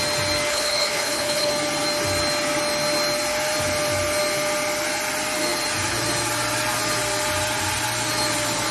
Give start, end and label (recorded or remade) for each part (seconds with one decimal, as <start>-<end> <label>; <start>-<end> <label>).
0.0-0.5 recorded; 0.5-1.5 remade; 1.5-8.7 recorded